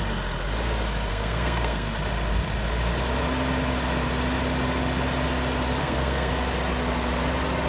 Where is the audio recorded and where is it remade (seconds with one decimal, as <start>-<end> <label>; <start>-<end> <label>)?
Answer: 0.0-1.1 recorded; 1.1-2.0 remade; 2.0-5.8 recorded; 5.8-6.3 remade; 6.3-7.7 recorded